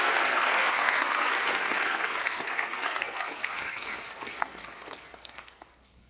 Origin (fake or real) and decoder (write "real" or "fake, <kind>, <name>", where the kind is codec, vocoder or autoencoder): fake, codec, SNAC